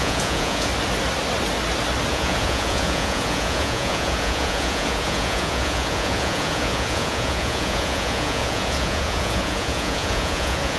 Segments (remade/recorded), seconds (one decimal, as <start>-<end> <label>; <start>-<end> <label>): 0.0-0.7 remade; 0.7-2.1 recorded; 2.1-10.8 remade